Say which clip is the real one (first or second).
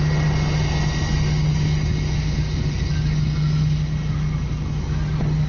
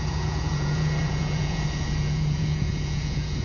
first